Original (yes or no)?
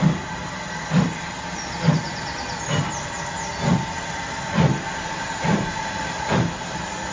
yes